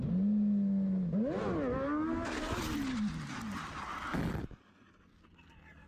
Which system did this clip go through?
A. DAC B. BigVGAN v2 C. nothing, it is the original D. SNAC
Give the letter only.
C